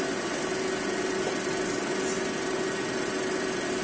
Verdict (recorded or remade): recorded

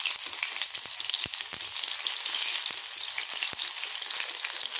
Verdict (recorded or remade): recorded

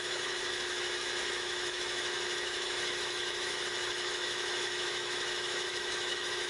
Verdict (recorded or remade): remade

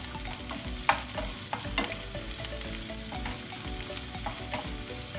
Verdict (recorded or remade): recorded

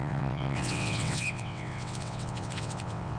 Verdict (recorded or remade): remade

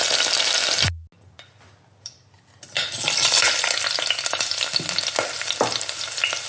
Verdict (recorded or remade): recorded